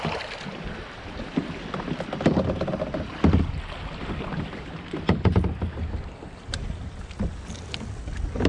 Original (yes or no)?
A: yes